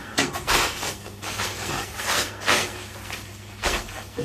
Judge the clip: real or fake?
fake